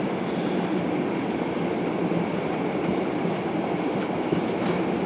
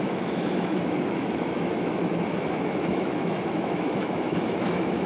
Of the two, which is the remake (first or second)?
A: second